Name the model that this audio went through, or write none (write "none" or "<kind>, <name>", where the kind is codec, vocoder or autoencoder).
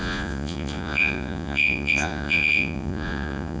vocoder, Vocos